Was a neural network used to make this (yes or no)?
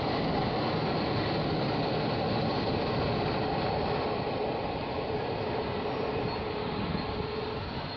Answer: no